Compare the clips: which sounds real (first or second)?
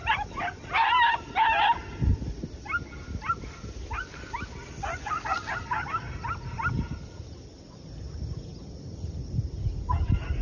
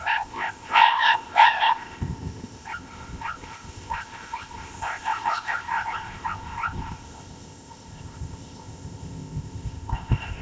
first